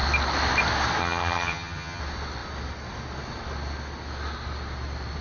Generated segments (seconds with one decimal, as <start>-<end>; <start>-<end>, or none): 1.0-2.0